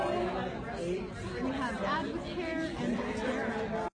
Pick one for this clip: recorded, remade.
recorded